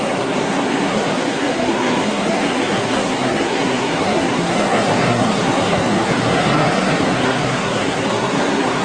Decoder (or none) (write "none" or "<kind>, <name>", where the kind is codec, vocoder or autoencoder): codec, SNAC